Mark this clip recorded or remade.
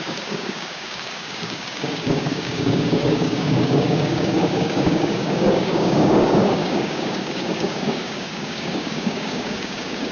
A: remade